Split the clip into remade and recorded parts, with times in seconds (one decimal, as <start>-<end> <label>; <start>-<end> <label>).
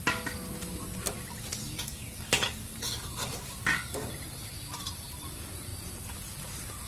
0.0-1.6 recorded; 1.6-4.1 remade; 4.1-6.9 recorded